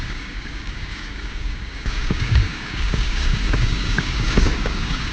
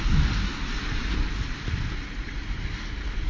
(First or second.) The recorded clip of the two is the second